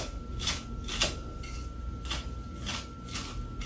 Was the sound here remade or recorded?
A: recorded